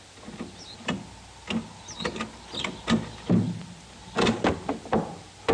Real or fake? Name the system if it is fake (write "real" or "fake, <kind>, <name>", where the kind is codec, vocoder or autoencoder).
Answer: real